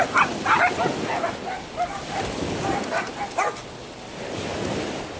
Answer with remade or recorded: recorded